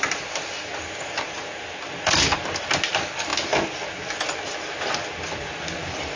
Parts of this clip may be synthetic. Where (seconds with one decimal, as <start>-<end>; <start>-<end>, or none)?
none